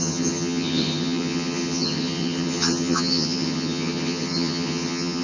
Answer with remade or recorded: remade